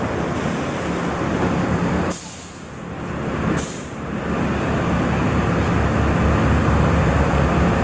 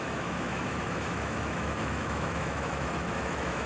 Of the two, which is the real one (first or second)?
first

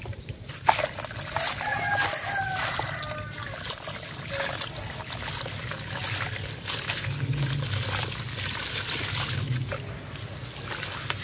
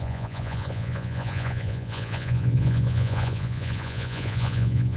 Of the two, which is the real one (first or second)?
first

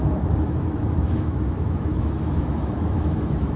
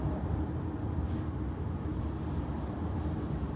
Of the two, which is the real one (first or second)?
second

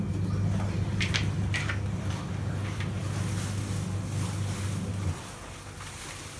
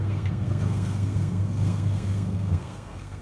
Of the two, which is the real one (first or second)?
first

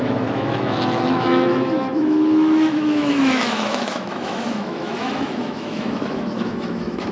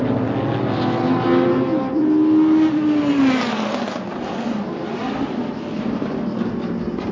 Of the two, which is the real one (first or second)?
second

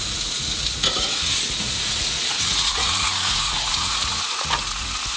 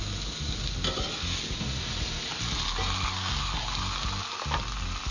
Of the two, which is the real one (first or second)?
second